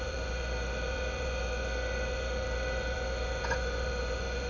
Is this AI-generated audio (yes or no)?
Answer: yes